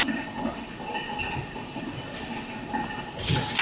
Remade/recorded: recorded